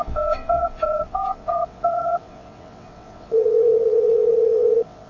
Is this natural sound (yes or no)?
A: no